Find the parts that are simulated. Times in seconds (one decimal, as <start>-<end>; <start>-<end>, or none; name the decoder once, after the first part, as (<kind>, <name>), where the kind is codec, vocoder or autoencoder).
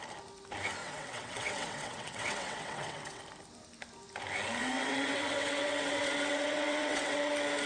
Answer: 0.8-3.2 (vocoder, WaveNeXt); 4.6-7.3